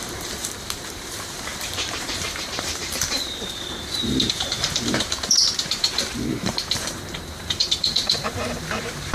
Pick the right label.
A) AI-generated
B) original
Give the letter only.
A